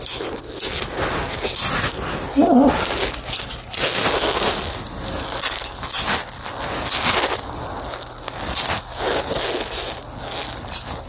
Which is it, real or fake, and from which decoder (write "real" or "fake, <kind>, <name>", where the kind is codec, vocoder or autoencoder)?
real